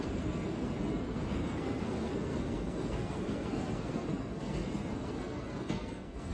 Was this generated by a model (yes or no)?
yes